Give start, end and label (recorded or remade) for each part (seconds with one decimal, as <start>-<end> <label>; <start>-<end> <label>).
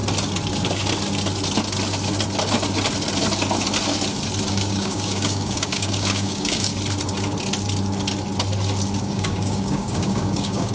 0.0-4.5 recorded; 4.5-6.7 remade; 6.7-9.0 recorded; 9.0-10.7 remade